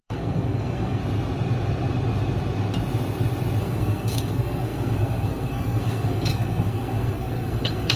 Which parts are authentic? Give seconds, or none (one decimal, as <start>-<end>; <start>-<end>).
1.0-3.6